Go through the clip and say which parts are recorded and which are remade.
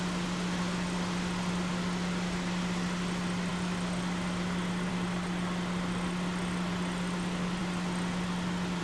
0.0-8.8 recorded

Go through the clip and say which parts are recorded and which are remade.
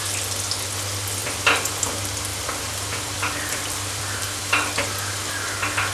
0.0-1.2 recorded; 1.2-1.9 remade; 1.9-2.3 recorded; 2.3-4.5 remade; 4.5-5.9 recorded